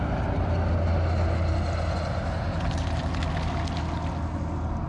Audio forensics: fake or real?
real